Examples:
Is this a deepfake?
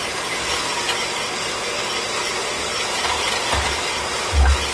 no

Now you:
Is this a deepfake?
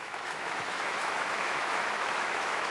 yes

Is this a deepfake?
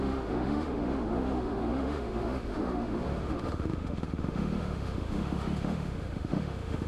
yes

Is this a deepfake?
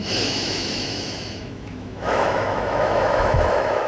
yes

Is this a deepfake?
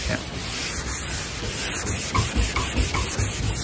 no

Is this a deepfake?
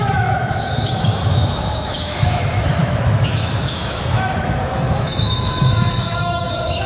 yes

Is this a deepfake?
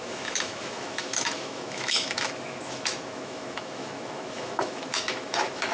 yes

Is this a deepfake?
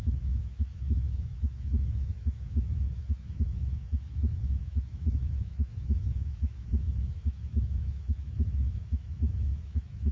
yes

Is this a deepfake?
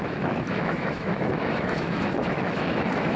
yes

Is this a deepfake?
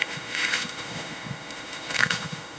yes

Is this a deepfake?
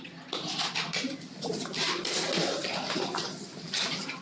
no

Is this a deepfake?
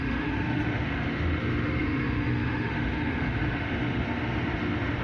yes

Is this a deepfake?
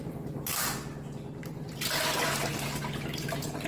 no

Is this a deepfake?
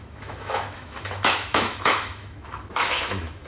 yes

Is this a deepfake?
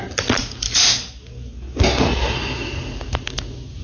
no